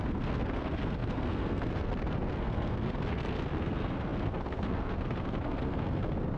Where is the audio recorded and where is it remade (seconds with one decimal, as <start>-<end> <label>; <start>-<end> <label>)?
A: 0.0-6.4 remade